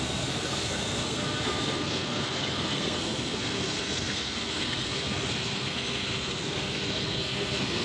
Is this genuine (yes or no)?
no